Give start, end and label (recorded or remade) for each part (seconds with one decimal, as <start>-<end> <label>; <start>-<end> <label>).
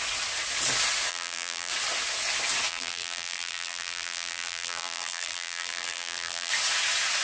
0.0-1.1 recorded; 1.1-1.7 remade; 1.7-2.7 recorded; 2.7-6.5 remade; 6.5-7.2 recorded